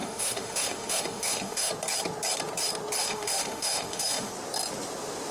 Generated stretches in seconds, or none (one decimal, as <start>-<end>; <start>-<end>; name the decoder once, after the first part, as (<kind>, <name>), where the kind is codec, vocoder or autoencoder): 0.0-1.7 (autoencoder, DAC-VAE); 3.0-4.3